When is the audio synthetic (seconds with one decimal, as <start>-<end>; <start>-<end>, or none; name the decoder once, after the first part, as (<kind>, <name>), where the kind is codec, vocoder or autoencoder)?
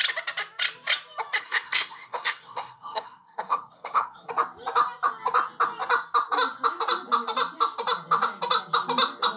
1.4-4.3 (codec, SNAC)